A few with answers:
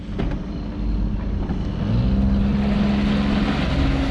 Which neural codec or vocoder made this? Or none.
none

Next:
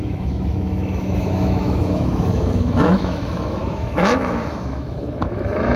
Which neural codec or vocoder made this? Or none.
autoencoder, DAC-VAE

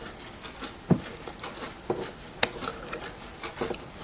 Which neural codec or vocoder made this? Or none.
none